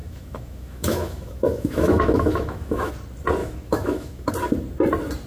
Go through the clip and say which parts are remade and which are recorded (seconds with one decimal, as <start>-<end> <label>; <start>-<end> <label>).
0.0-2.9 remade; 2.9-3.4 recorded; 3.4-4.3 remade; 4.3-5.3 recorded